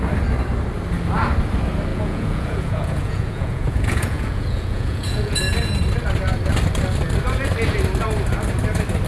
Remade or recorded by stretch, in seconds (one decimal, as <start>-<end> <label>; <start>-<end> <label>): 0.0-1.9 recorded; 1.9-5.4 remade; 5.4-9.1 recorded